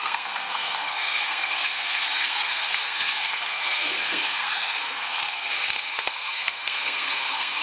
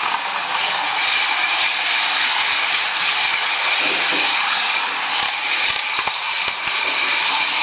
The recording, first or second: second